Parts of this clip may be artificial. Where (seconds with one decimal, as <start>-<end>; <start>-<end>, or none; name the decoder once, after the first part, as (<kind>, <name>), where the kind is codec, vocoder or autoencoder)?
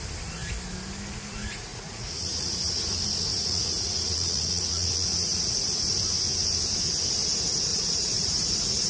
1.3-2.9 (vocoder, Vocos); 3.3-5.8; 7.7-8.9